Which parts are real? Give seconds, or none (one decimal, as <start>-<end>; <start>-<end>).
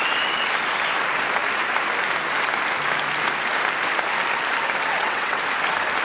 0.0-4.9; 5.4-6.0